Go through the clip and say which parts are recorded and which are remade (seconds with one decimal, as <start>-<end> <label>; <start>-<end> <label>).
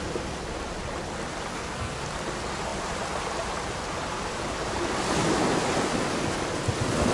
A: 0.0-1.5 recorded; 1.5-2.0 remade; 2.0-7.1 recorded